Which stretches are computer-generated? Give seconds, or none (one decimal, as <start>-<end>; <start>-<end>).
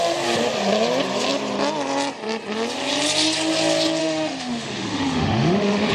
4.0-5.9